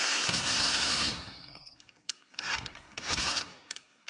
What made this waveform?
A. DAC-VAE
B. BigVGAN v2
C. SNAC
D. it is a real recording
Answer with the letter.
C